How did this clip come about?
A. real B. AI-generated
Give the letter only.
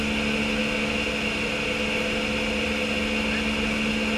A